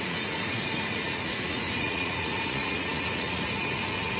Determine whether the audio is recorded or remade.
remade